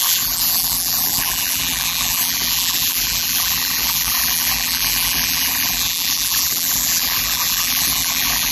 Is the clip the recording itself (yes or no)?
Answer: no